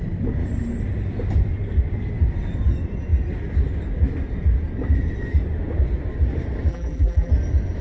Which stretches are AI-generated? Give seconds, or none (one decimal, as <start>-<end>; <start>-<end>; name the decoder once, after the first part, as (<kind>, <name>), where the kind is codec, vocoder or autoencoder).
6.7-7.3 (vocoder, BigVGAN v2)